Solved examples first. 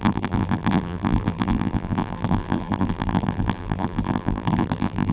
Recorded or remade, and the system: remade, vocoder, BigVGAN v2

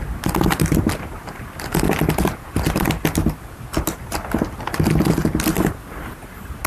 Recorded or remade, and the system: recorded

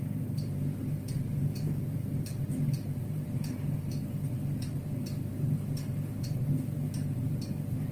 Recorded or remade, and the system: remade, vocoder, BigVGAN v2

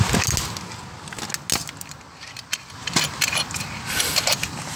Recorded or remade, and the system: recorded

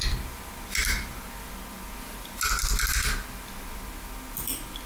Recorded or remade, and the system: recorded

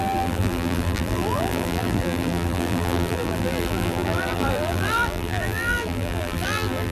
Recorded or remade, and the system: remade, vocoder, BigVGAN v2